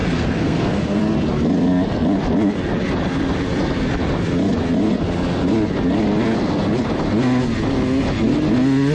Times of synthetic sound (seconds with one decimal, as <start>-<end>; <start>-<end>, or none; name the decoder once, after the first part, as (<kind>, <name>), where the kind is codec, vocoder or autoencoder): 0.0-1.0 (codec, SNAC)